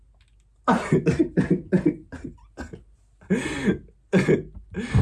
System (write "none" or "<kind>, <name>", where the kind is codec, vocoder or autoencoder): none